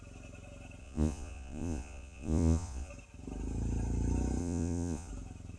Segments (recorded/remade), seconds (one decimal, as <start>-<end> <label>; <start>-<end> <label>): 0.0-0.8 recorded; 0.8-2.9 remade; 2.9-4.4 recorded; 4.4-5.1 remade; 5.1-5.6 recorded